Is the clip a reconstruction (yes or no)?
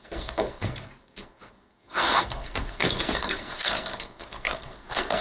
yes